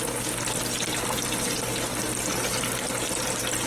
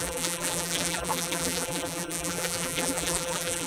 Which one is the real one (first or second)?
first